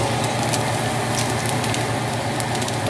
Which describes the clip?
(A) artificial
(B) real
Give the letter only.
B